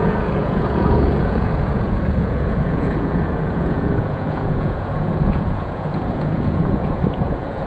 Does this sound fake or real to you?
fake